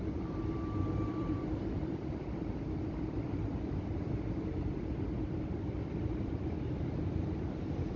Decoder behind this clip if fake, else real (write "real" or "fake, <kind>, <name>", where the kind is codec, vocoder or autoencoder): fake, vocoder, BigVGAN v2